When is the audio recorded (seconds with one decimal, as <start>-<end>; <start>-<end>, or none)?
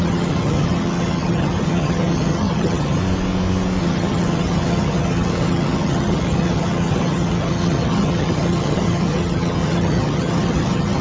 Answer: 3.0-3.8